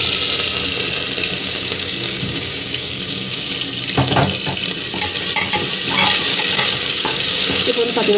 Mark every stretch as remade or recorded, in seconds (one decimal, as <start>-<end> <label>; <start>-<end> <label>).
0.0-1.4 recorded; 1.4-3.5 remade; 3.5-6.3 recorded; 6.3-8.2 remade